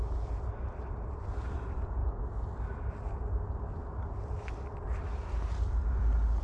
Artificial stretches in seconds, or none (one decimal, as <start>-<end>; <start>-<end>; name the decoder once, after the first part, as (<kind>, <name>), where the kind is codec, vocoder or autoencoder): 0.0-2.0 (vocoder, BigVGAN v2); 5.2-6.4